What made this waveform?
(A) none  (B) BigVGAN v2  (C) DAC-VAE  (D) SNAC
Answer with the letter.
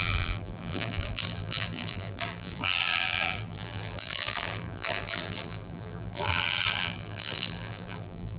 B